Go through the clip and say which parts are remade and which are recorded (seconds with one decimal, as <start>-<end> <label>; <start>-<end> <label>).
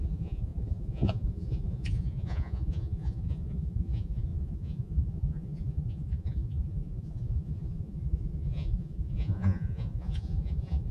0.0-10.9 remade